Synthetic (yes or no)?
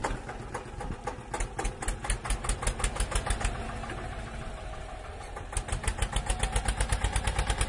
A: no